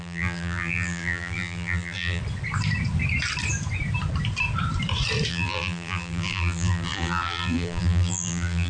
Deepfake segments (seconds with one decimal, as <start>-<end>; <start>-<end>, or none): 0.0-2.2; 5.3-8.7